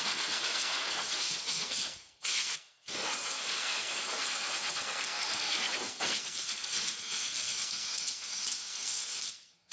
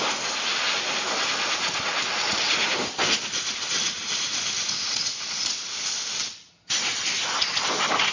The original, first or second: second